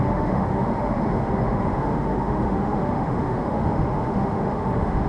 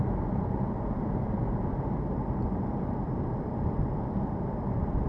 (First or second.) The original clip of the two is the second